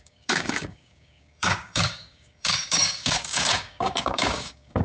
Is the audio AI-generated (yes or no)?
yes